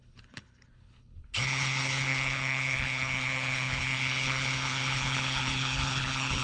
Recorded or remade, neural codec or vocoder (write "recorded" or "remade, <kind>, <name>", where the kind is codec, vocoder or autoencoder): remade, codec, HILCodec